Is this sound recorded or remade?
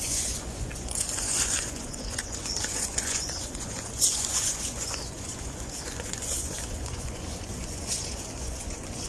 remade